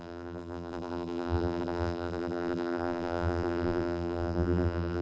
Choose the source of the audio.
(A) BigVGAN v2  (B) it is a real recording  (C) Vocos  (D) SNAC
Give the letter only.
A